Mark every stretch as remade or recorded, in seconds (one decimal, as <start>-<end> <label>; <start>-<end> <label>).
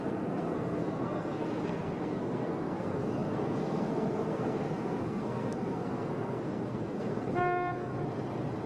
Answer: 0.0-7.9 remade; 7.9-8.7 recorded